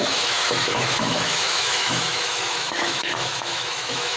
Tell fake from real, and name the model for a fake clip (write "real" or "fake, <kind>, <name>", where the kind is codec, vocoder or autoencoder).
fake, autoencoder, DAC-VAE